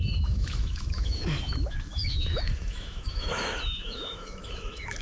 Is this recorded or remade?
remade